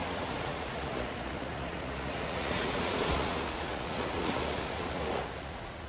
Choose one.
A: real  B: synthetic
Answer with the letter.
B